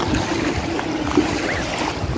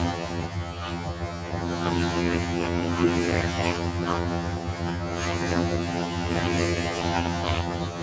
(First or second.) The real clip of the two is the first